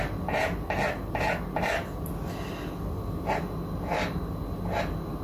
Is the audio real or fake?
real